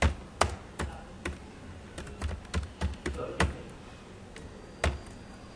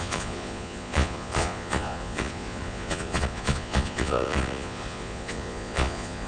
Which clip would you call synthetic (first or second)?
second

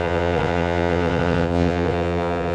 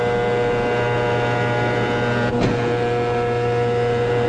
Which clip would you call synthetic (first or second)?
first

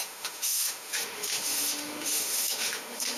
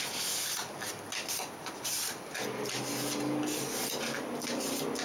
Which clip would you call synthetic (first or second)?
first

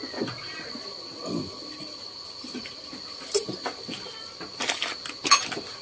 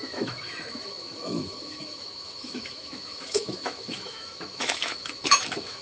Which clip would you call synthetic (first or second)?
second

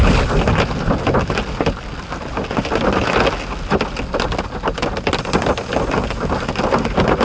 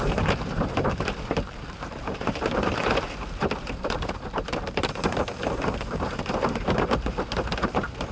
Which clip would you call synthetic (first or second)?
second